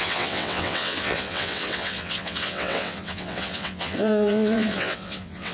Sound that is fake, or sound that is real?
fake